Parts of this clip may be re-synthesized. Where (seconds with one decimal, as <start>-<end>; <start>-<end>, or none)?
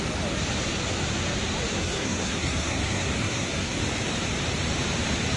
1.7-3.8